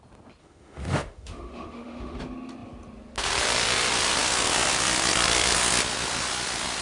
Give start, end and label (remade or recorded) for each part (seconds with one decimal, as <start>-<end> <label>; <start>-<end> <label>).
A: 0.0-0.4 recorded; 0.4-2.2 remade; 2.2-6.8 recorded